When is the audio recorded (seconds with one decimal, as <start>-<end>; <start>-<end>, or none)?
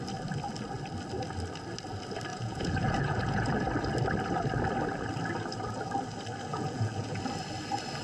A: 0.0-2.3; 3.5-6.5; 7.2-8.0